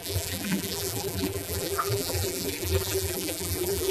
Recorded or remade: remade